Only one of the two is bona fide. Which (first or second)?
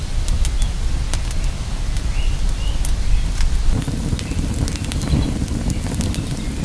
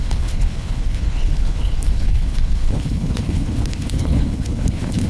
first